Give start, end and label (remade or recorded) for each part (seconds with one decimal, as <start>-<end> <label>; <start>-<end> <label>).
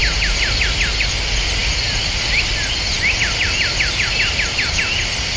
0.0-0.6 remade; 0.6-5.4 recorded